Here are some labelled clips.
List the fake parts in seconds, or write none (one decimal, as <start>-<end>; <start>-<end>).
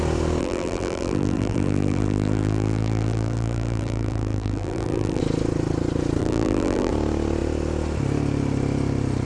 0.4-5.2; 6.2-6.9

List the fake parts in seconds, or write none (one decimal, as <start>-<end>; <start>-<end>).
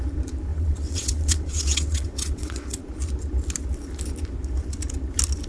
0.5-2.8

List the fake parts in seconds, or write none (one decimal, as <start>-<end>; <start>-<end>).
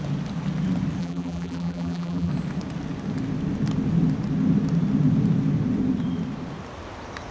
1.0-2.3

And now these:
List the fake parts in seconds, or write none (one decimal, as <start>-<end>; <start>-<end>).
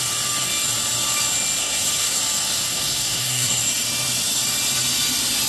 1.6-2.2; 2.7-3.6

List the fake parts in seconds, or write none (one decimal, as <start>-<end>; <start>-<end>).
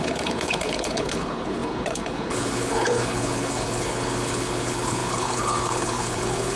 0.0-6.6